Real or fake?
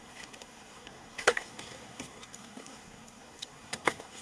fake